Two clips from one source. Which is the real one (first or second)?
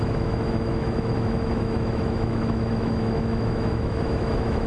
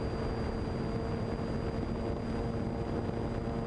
second